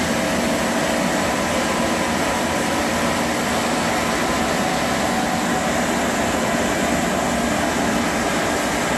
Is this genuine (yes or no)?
yes